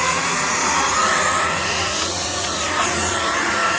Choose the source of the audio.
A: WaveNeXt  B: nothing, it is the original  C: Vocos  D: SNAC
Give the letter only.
C